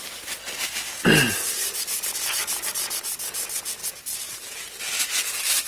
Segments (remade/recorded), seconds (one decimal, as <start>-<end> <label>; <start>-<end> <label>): 0.0-5.7 recorded